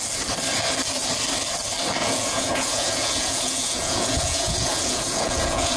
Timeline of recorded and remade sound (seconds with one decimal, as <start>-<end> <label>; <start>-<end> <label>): 0.0-2.0 recorded; 2.0-5.8 remade